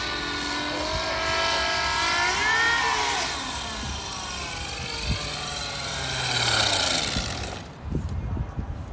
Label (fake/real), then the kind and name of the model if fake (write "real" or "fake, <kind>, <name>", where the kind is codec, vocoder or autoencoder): real